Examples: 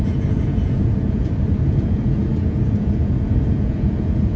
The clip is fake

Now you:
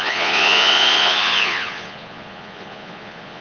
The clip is fake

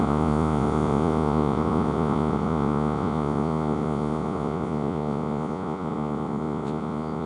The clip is fake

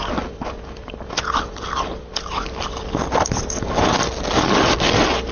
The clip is real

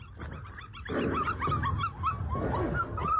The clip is real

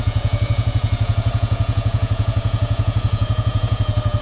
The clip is fake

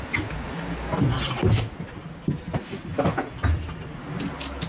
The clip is real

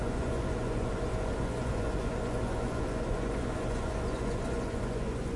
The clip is fake